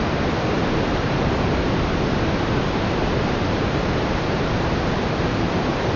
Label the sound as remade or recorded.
remade